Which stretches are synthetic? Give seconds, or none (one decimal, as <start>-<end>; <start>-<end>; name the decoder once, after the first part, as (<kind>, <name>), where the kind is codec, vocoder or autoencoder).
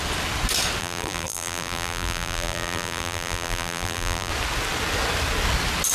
0.8-4.3 (vocoder, BigVGAN v2)